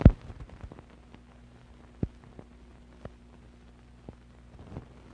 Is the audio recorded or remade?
recorded